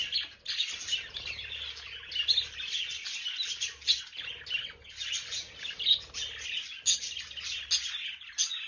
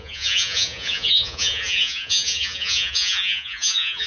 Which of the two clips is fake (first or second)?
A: second